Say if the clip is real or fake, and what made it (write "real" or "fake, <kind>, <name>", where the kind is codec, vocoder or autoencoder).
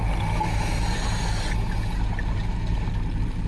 real